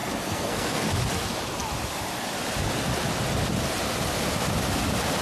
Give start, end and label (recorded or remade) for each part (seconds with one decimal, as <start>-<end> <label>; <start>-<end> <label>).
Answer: 0.0-0.9 remade; 0.9-5.2 recorded